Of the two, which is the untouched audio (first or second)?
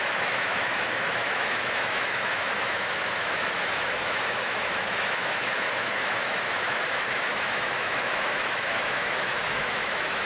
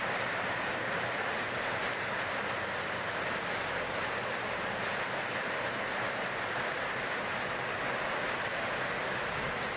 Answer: second